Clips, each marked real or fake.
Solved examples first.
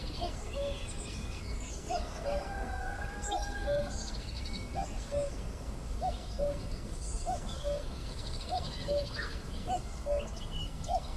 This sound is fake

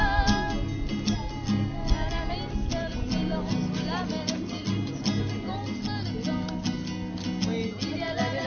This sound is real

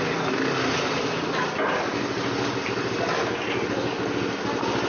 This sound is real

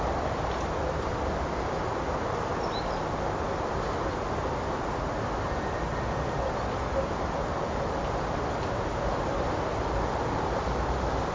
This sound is real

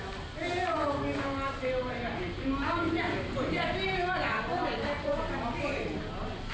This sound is real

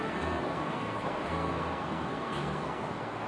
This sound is fake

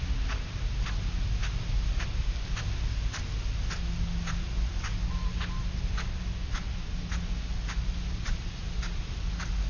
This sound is real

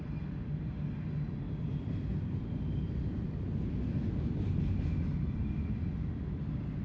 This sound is real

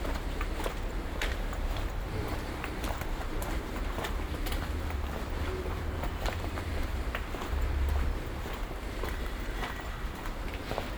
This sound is fake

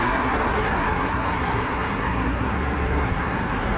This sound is fake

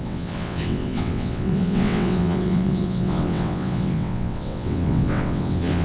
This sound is fake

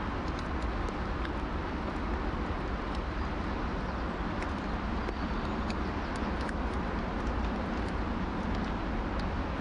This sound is real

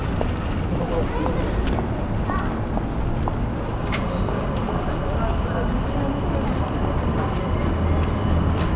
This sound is real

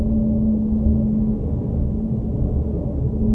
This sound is real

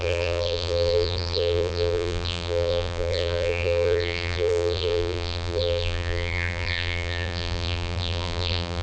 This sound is fake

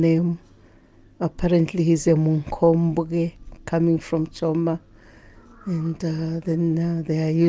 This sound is real